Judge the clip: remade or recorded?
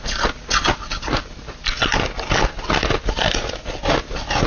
recorded